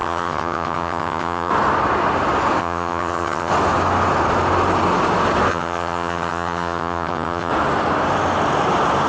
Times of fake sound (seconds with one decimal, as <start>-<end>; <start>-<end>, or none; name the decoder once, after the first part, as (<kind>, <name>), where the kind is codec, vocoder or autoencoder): 0.0-1.5 (vocoder, HiFi-GAN); 2.6-3.5; 5.5-7.5